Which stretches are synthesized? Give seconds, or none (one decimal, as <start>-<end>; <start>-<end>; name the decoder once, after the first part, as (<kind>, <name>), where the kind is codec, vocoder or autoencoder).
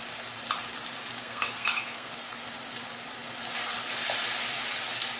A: 1.2-2.1 (codec, SNAC)